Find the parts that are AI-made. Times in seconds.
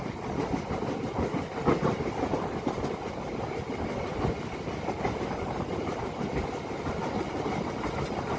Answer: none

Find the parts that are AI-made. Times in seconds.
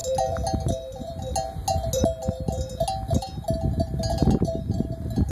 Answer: none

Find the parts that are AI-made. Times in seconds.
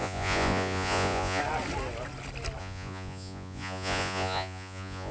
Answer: 0.0-1.4 (vocoder, Vocos); 2.6-5.1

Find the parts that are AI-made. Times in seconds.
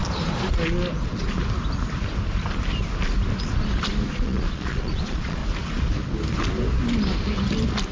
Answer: 4.1-5.4 (vocoder, Vocos)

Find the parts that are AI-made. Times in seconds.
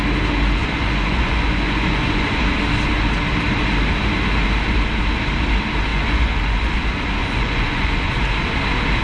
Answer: 0.6-2.4 (vocoder, Vocos); 5.9-6.7; 7.2-8.1